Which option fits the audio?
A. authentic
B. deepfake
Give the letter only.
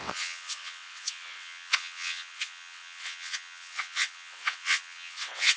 B